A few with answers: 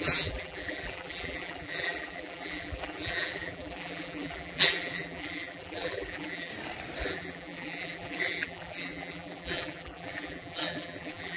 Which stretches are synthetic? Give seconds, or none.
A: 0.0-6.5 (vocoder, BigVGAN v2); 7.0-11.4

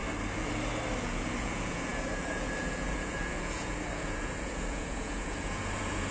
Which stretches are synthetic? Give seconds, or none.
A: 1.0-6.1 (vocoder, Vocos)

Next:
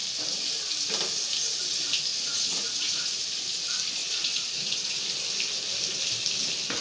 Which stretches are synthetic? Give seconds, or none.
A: 2.1-3.2 (vocoder, Vocos); 4.0-5.0